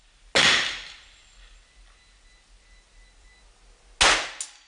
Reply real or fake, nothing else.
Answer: real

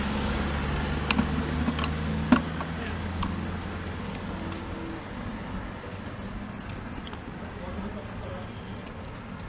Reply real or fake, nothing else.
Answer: real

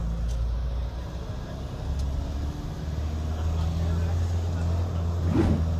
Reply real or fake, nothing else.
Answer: real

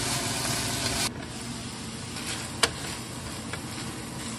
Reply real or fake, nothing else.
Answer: real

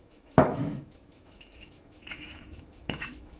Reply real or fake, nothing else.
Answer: fake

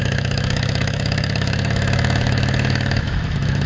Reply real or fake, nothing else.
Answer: fake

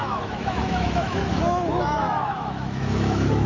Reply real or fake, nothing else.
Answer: fake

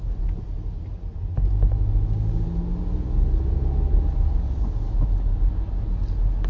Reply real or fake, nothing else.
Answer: real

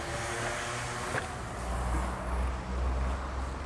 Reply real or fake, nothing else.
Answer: real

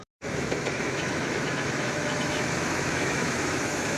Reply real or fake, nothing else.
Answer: fake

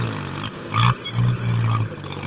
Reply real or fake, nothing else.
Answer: real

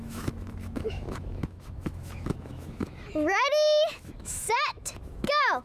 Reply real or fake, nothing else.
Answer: fake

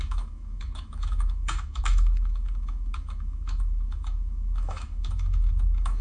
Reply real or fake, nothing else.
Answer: fake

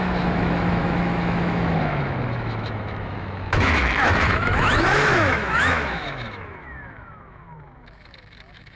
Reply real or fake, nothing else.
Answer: fake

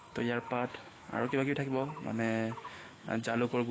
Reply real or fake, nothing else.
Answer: fake